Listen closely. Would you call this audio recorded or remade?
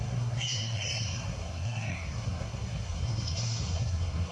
remade